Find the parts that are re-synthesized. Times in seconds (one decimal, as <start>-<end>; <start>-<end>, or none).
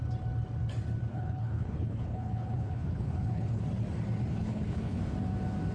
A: 1.1-3.6; 4.3-5.0